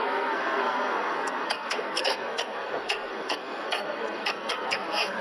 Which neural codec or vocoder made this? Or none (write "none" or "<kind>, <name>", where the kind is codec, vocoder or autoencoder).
codec, SNAC